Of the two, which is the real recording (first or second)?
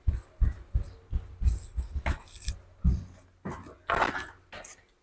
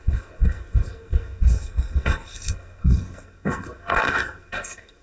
first